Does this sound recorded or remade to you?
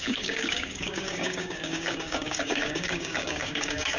remade